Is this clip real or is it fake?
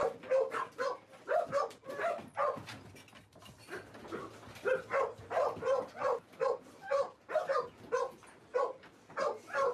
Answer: real